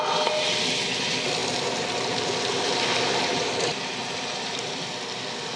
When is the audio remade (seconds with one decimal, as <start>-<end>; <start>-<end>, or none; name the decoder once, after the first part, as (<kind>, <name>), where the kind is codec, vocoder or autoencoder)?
1.4-4.8 (vocoder, BigVGAN v2)